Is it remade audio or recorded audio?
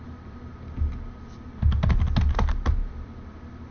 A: recorded